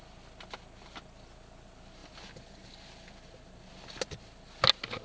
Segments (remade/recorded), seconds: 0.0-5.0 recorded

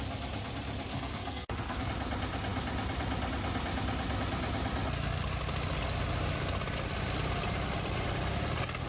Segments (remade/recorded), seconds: 0.0-0.9 recorded; 0.9-1.9 remade; 1.9-8.9 recorded

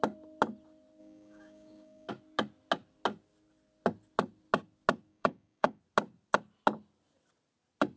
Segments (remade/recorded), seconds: 0.0-1.0 recorded; 1.0-2.1 remade; 2.1-5.1 recorded; 5.1-5.8 remade; 5.8-8.0 recorded

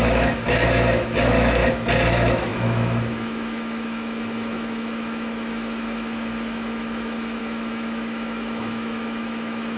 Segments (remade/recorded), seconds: 0.0-1.6 remade; 1.6-2.1 recorded; 2.1-9.8 remade

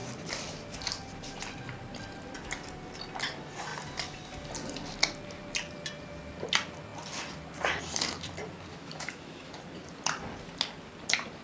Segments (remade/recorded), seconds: 0.0-8.7 recorded; 8.7-9.6 remade; 9.6-11.4 recorded

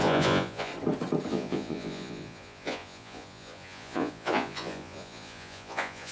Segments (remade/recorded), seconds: 0.0-0.7 remade; 0.7-1.3 recorded; 1.3-6.1 remade

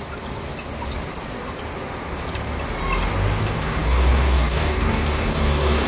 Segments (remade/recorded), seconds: 0.0-3.4 recorded; 3.4-5.9 remade

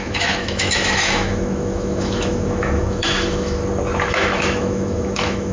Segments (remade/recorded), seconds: 0.0-3.6 remade; 3.6-4.1 recorded; 4.1-5.5 remade